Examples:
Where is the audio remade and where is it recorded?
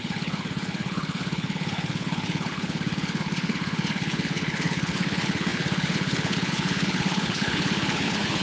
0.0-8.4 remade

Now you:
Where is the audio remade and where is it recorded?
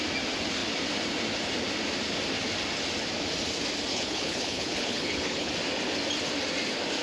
0.0-3.9 recorded; 3.9-5.5 remade; 5.5-7.0 recorded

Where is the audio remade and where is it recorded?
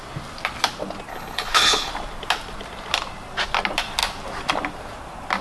0.0-1.1 recorded; 1.1-1.9 remade; 1.9-5.4 recorded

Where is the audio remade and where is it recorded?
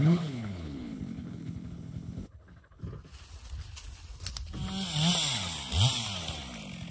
0.0-2.8 remade; 2.8-6.9 recorded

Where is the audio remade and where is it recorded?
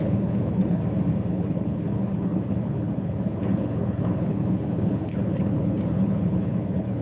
0.0-0.8 remade; 0.8-1.3 recorded; 1.3-7.0 remade